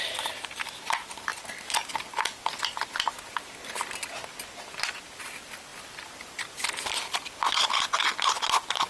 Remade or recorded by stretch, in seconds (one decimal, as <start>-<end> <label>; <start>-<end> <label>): 0.0-1.3 remade; 1.3-4.9 recorded; 4.9-8.9 remade

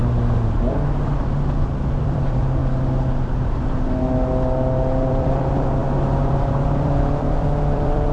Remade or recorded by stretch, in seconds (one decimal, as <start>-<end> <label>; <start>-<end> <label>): 0.0-0.7 recorded; 0.7-2.6 remade; 2.6-5.1 recorded; 5.1-8.1 remade

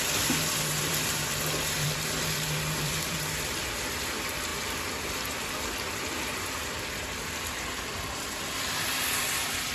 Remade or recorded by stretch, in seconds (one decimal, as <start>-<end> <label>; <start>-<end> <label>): 0.0-9.7 remade

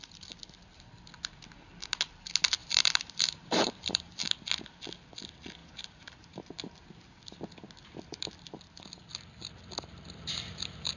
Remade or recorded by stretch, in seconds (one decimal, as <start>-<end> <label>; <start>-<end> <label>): 0.0-2.6 recorded; 2.6-4.3 remade; 4.3-5.6 recorded; 5.6-6.4 remade; 6.4-11.0 recorded